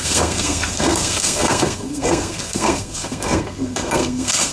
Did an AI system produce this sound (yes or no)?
yes